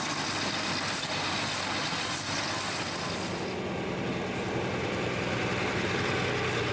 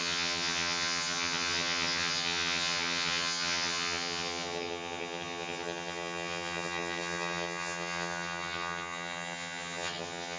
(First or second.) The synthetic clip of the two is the second